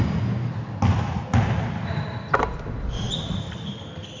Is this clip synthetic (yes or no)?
no